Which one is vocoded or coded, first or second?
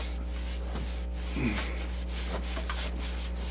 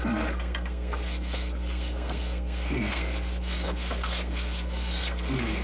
second